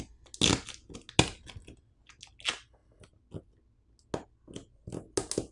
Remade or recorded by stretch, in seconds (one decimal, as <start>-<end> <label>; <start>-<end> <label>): 0.0-5.5 recorded